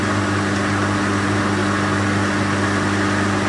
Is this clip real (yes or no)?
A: yes